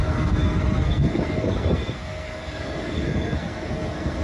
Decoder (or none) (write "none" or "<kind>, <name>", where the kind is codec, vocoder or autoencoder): codec, SNAC